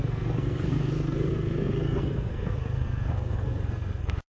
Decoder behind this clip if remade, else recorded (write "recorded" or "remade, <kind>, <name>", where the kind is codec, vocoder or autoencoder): remade, codec, SNAC